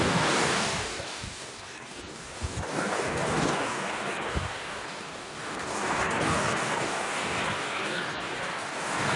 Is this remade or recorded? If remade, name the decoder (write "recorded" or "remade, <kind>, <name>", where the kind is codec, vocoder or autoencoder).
remade, codec, DAC